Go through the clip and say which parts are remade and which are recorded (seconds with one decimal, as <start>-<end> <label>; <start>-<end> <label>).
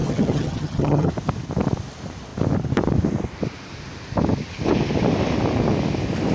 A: 0.0-1.1 remade; 1.1-6.3 recorded